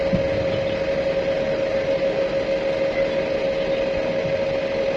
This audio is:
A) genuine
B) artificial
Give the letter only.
A